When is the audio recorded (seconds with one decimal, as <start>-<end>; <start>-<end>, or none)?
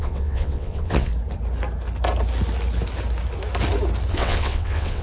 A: 1.1-4.1